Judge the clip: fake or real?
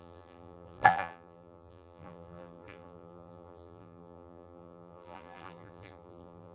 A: fake